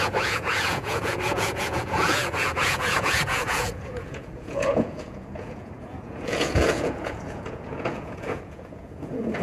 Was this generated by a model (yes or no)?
yes